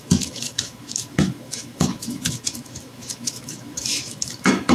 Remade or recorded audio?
remade